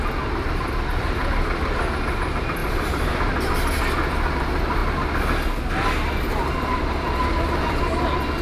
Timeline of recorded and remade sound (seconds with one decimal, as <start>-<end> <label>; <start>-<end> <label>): 0.0-2.6 recorded; 2.6-3.2 remade; 3.2-8.4 recorded